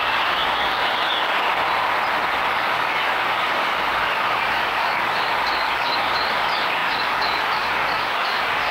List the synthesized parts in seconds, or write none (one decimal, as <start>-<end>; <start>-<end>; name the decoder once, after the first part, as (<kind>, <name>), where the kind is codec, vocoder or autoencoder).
0.0-1.5 (codec, DAC); 2.5-8.7